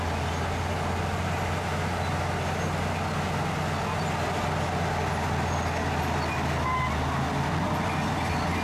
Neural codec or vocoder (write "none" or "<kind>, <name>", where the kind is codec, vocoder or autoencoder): none